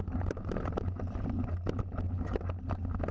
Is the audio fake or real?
real